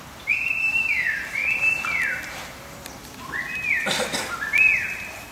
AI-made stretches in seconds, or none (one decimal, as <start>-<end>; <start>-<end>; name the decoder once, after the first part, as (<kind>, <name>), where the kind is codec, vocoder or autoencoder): 0.7-1.2 (autoencoder, DAC-VAE)